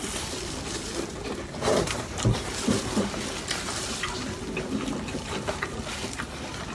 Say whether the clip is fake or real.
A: fake